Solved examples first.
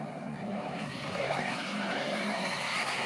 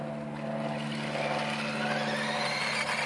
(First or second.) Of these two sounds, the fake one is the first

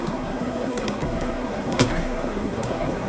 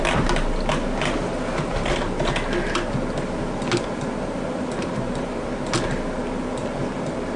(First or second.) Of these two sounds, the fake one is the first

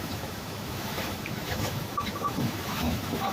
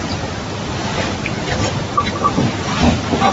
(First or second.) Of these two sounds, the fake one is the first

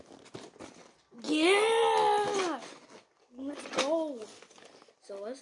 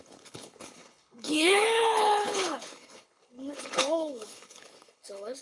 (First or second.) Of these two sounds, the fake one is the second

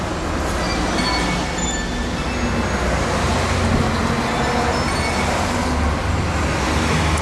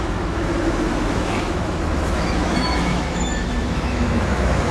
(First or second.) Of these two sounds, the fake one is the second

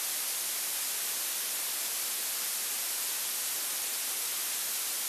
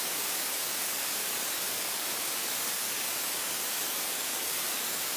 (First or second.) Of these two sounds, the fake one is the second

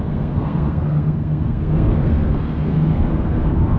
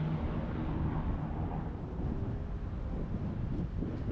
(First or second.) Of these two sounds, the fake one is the first